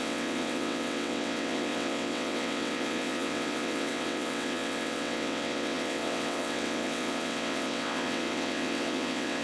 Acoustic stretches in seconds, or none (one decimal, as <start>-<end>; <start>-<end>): none